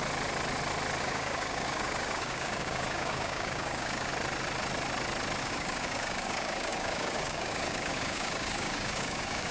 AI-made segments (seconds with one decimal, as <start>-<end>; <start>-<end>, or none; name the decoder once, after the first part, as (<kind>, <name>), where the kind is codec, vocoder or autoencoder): 1.0-4.1 (codec, DAC); 5.4-9.5